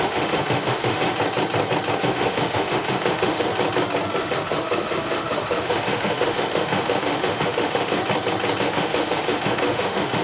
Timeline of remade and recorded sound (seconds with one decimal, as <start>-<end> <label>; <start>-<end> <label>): 0.0-1.1 remade; 1.1-2.0 recorded; 2.0-3.5 remade; 3.5-4.2 recorded; 4.2-8.0 remade; 8.0-8.6 recorded; 8.6-10.2 remade